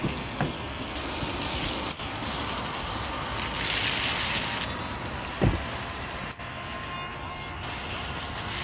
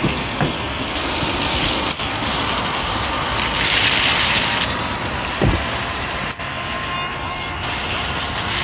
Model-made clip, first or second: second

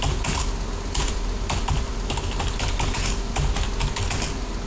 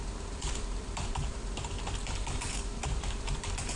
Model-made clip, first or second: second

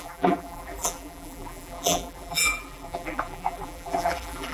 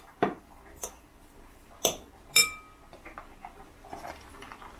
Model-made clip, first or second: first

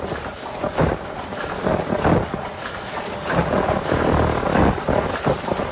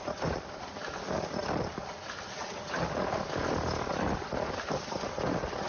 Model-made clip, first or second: second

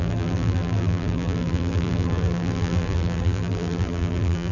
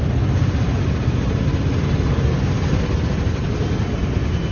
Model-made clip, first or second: first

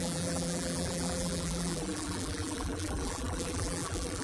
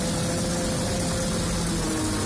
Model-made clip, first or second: first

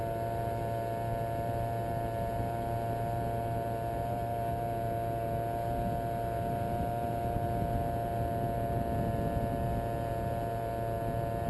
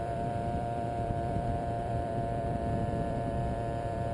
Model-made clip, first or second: second